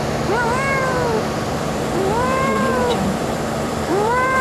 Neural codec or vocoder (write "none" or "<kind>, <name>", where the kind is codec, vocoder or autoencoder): vocoder, BigVGAN v2